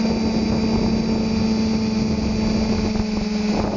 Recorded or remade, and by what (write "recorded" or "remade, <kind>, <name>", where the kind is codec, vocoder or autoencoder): recorded